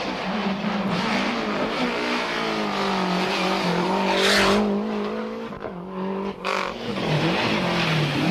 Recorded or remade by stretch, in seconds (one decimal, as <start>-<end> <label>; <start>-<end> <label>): 0.0-5.2 recorded; 5.2-7.1 remade; 7.1-8.3 recorded